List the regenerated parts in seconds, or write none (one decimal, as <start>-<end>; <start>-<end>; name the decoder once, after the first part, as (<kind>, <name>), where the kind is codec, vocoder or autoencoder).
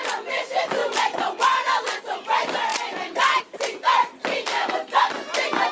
4.5-5.1 (codec, SNAC)